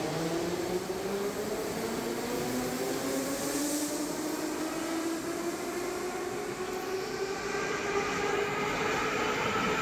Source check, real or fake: real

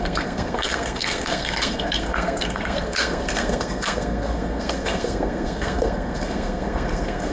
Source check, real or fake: fake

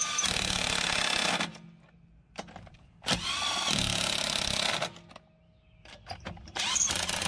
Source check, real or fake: real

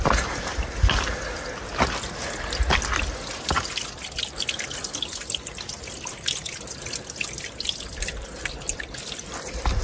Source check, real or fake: real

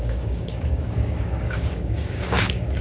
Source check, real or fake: fake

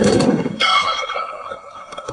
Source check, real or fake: fake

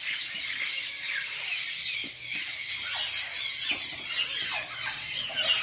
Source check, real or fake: real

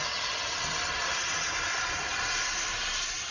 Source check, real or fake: real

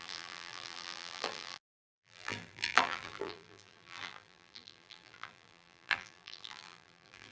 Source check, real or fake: fake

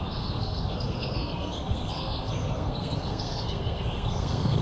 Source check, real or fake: fake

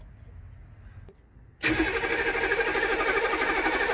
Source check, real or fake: real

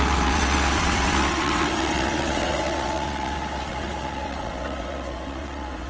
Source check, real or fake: fake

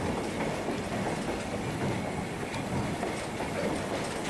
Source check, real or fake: real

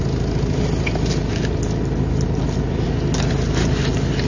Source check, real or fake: real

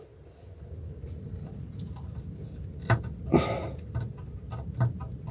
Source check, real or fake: real